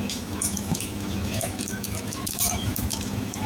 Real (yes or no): no